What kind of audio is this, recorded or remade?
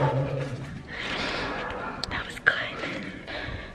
remade